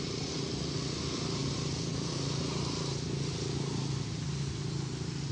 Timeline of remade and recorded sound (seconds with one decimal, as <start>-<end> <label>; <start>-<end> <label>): 0.0-5.3 recorded